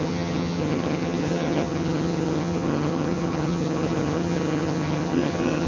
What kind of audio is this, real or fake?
fake